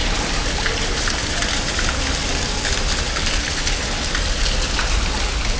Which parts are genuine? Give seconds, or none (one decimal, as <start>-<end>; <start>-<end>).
0.0-5.6